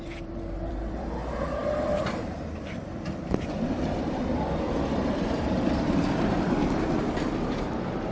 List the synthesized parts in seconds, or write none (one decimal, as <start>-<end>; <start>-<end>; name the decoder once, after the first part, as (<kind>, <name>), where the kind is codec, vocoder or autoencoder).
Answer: 0.0-8.1 (vocoder, BigVGAN v2)